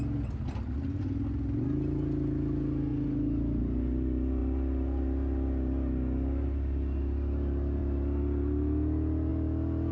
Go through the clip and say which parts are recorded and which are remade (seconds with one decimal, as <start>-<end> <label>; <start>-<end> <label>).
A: 0.0-9.9 recorded